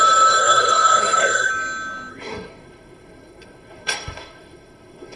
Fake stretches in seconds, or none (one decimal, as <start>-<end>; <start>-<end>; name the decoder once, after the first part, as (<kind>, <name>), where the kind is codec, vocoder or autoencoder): 0.4-1.5 (codec, SNAC); 2.1-5.2